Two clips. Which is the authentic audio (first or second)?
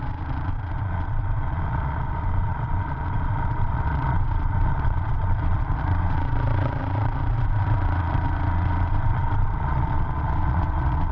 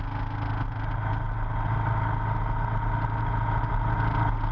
second